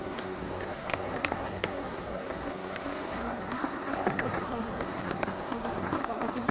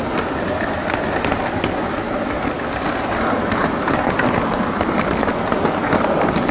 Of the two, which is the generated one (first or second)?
first